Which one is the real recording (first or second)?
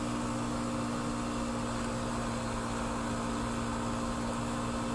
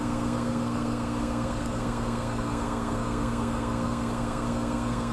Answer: first